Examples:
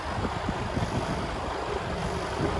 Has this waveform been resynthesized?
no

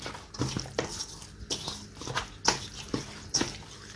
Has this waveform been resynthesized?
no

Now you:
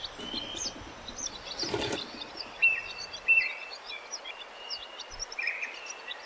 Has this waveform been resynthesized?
no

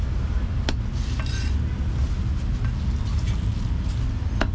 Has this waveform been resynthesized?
no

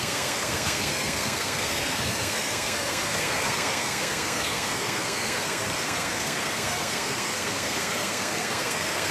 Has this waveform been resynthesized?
yes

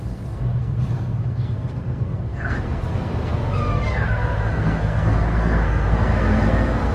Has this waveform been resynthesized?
yes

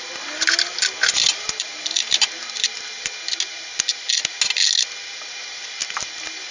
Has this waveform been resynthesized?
no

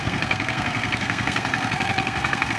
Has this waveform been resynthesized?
yes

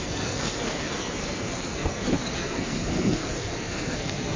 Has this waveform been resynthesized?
yes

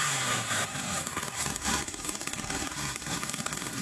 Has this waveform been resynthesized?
yes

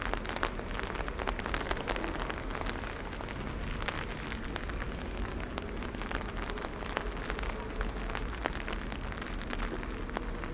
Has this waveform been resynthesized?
no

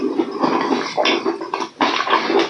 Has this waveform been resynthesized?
no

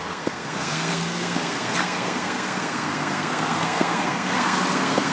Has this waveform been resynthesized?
yes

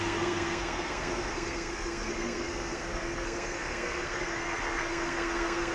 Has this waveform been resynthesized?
yes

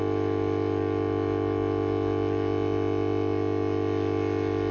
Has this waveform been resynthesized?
no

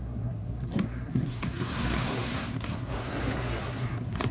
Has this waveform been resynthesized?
yes